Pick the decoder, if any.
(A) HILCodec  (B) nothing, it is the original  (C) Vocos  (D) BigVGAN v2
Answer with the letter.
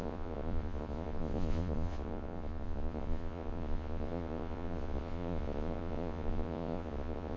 C